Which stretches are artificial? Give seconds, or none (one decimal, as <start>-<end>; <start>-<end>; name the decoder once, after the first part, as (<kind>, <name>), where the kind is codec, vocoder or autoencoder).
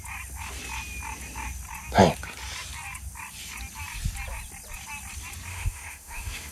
5.5-6.5 (autoencoder, DAC-VAE)